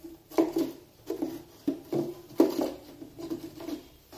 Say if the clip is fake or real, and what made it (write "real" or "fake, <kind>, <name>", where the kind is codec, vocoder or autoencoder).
real